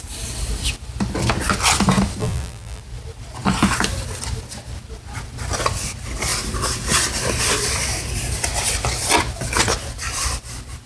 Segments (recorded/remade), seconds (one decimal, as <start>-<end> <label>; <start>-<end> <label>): 0.0-2.2 recorded; 2.2-2.8 remade; 2.8-10.9 recorded